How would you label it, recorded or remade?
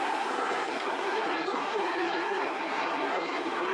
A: remade